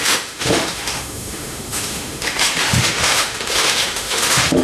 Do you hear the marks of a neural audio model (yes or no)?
yes